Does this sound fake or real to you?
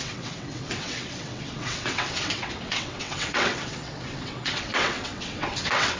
fake